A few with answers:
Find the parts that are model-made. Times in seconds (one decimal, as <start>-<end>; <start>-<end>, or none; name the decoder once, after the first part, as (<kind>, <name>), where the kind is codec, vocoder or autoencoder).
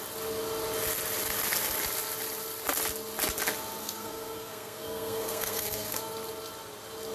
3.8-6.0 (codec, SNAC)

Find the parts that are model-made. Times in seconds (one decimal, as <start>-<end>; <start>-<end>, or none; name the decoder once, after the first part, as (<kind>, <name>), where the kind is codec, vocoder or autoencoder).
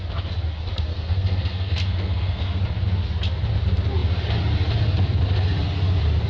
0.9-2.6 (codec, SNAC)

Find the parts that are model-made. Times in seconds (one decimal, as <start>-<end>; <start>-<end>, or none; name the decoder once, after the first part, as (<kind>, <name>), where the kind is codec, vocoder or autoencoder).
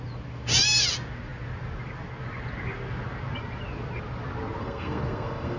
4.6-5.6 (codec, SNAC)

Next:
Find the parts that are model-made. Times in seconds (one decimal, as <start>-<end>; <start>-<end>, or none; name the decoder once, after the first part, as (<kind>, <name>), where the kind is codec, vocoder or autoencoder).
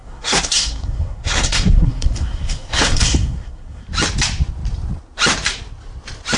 0.0-3.8 (codec, SNAC)